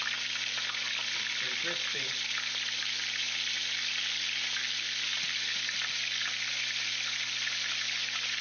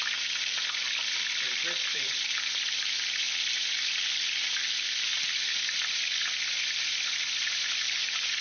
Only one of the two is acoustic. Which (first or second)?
first